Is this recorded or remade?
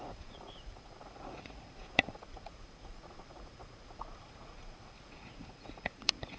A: remade